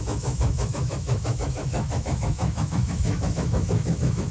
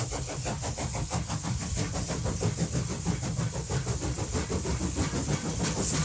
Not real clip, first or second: first